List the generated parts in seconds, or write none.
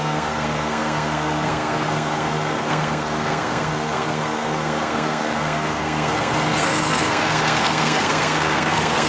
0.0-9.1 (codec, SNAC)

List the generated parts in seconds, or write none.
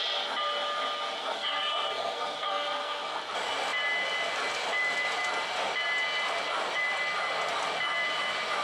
1.2-3.2 (codec, SNAC)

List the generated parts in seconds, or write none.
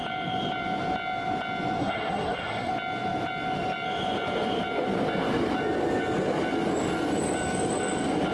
1.8-2.7 (codec, SNAC)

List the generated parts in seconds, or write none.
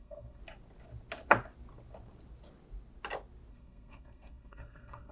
0.0-0.4 (codec, SNAC); 3.5-5.1